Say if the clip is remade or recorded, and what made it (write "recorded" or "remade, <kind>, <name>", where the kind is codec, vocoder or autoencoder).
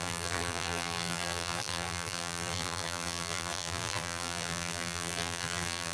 remade, vocoder, BigVGAN v2